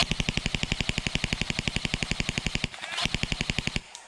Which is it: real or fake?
real